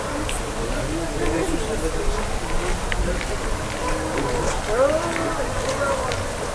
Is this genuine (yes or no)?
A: yes